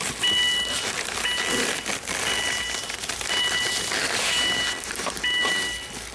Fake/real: fake